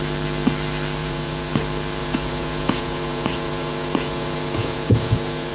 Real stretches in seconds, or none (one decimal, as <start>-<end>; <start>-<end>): 0.0-1.0; 1.5-2.0